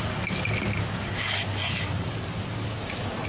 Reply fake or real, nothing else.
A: real